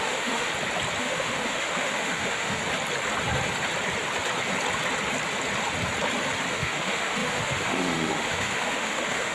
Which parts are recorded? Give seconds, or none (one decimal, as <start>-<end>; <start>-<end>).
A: 0.5-1.0; 2.6-6.5